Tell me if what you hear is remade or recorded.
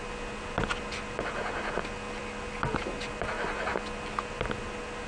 recorded